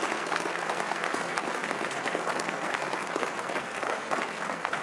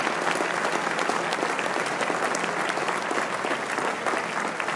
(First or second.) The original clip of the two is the second